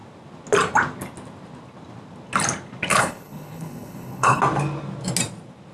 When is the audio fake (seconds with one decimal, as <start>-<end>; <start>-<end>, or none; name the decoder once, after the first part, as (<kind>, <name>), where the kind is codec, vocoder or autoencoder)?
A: 2.9-4.4 (codec, HILCodec)